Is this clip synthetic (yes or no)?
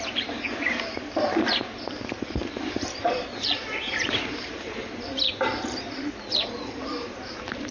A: yes